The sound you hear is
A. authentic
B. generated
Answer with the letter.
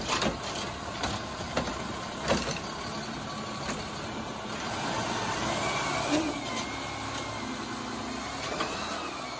A